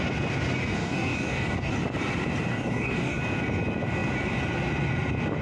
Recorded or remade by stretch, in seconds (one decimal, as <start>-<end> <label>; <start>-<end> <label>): 0.0-0.8 recorded; 0.8-1.7 remade; 1.7-2.5 recorded; 2.5-3.2 remade; 3.2-5.4 recorded